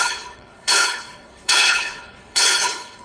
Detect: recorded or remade remade